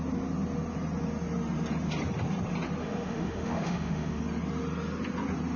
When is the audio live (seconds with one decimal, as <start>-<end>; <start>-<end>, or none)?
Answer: 0.0-2.8; 4.2-5.6

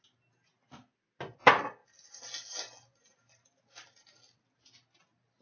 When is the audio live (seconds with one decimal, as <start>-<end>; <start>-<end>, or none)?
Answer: 0.0-5.4

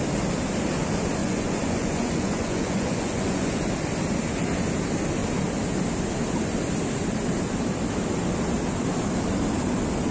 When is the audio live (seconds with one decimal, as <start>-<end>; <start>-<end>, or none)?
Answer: 0.0-1.2; 3.6-10.1

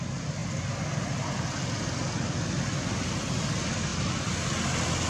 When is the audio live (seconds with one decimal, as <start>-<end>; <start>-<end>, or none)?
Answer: 0.0-5.1

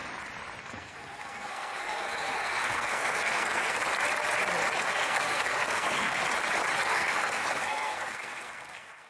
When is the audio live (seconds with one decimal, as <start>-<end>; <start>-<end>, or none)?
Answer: 0.0-0.6; 3.8-4.8; 6.2-6.8

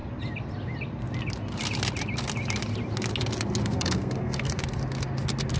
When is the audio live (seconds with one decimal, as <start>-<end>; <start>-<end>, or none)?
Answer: 0.0-3.6; 4.5-5.6